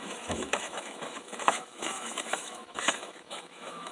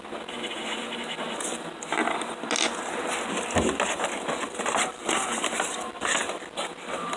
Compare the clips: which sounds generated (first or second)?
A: first